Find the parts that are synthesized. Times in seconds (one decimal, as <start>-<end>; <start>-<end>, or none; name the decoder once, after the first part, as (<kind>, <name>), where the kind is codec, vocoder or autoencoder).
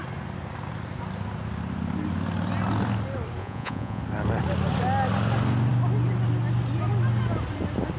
3.4-4.0 (vocoder, Vocos)